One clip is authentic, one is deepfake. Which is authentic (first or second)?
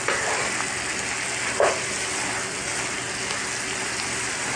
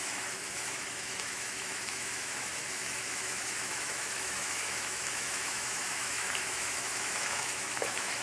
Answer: first